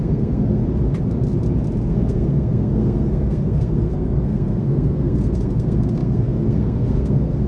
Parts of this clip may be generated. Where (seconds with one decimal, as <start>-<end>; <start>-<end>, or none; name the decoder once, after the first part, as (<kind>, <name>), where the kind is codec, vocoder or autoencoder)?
0.0-0.6 (codec, SNAC); 1.8-7.5